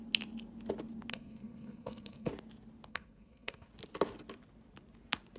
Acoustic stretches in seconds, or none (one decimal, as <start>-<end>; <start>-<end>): 0.0-1.1; 2.3-2.9; 3.7-5.4